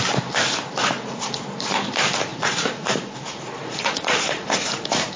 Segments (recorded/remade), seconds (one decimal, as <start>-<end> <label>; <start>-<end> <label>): 0.0-0.8 recorded; 0.8-1.4 remade; 1.4-2.3 recorded; 2.3-5.2 remade